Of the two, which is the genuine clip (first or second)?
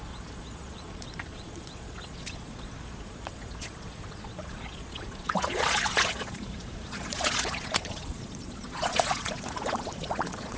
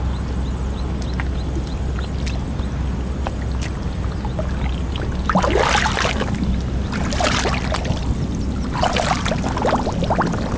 second